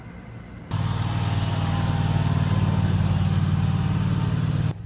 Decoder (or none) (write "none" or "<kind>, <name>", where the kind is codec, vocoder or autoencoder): none